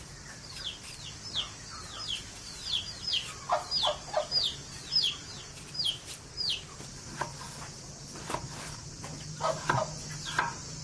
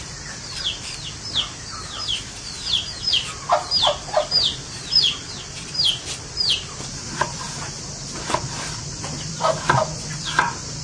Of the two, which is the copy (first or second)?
second